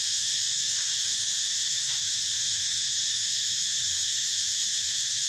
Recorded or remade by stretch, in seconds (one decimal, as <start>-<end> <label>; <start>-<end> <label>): 0.0-5.3 remade